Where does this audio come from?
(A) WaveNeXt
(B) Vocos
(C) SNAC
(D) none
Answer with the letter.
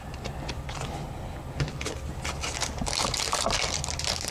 D